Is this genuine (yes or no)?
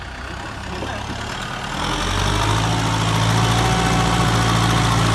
yes